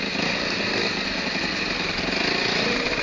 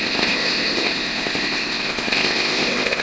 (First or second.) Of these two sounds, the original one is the first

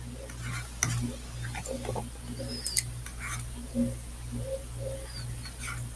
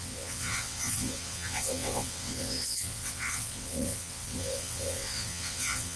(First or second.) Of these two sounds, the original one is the first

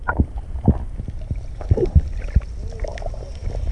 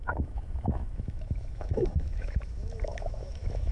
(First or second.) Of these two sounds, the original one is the first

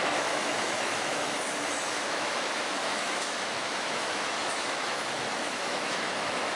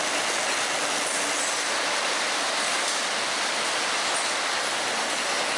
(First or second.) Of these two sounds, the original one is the second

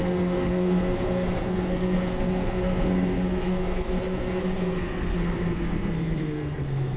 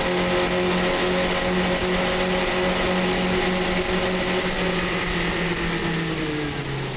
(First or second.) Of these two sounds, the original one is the second